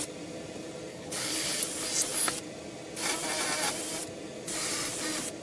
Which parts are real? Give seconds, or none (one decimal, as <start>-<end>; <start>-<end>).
0.0-0.9; 1.6-5.4